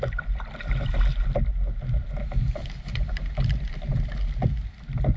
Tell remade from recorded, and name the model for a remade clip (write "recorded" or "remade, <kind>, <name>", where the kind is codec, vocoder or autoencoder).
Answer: recorded